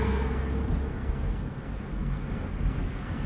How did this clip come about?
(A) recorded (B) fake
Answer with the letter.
B